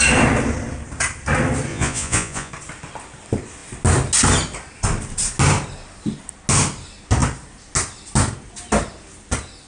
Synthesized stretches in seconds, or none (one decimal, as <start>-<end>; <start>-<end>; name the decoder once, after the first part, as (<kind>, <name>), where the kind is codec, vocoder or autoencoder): 1.7-2.5 (vocoder, Vocos)